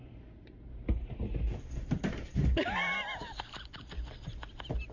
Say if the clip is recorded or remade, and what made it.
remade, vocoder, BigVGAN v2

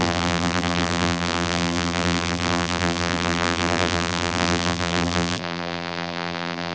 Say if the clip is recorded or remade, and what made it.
remade, vocoder, BigVGAN v2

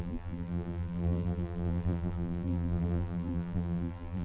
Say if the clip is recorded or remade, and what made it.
remade, vocoder, BigVGAN v2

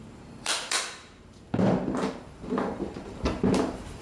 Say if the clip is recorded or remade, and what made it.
remade, vocoder, BigVGAN v2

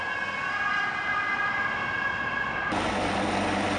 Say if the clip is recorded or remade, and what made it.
recorded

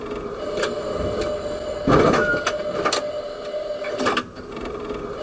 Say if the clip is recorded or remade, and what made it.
recorded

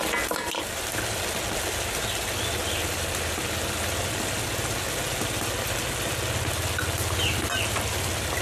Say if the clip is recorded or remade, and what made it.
recorded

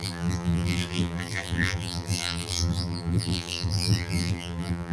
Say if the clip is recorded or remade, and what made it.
remade, vocoder, BigVGAN v2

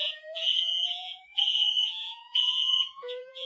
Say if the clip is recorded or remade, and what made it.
remade, vocoder, BigVGAN v2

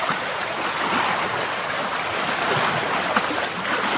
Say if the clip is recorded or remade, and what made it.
recorded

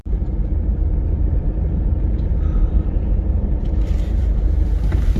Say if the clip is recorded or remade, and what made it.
remade, vocoder, BigVGAN v2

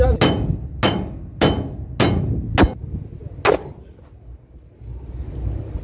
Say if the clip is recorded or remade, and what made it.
recorded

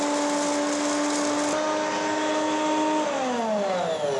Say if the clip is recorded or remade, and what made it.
recorded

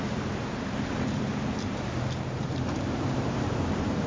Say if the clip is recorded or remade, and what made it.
remade, vocoder, BigVGAN v2